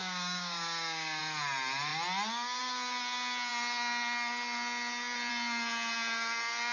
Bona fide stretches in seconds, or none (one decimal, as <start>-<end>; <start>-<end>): 1.2-6.7